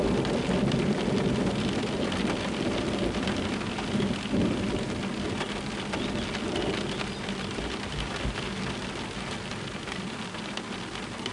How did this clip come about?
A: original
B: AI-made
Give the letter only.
A